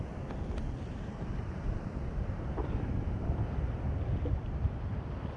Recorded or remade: recorded